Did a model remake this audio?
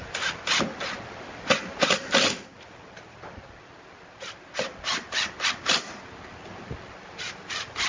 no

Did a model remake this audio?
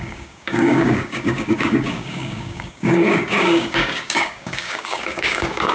yes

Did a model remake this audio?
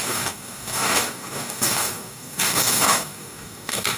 yes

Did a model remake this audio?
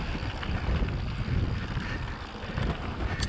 no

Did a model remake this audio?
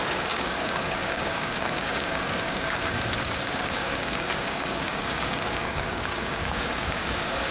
yes